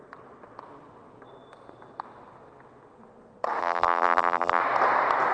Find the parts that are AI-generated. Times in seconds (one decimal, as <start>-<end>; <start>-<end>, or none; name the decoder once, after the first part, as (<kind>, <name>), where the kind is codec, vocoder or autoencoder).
3.6-4.6 (vocoder, BigVGAN v2)